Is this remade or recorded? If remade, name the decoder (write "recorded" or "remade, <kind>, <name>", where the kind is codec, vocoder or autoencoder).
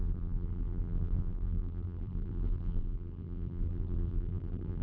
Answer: remade, vocoder, BigVGAN v2